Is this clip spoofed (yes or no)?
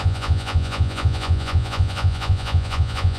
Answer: yes